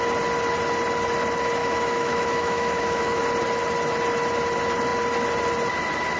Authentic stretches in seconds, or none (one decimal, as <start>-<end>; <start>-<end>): 0.0-1.6; 3.2-6.2